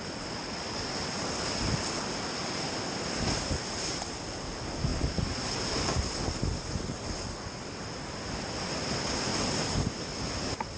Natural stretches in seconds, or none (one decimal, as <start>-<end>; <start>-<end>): 0.0-10.8